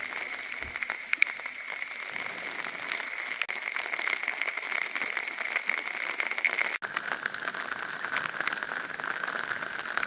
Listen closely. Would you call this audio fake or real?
real